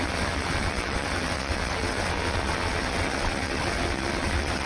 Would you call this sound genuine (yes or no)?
no